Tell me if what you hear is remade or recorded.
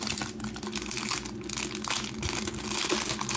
recorded